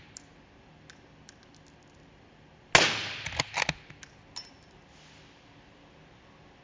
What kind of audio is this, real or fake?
real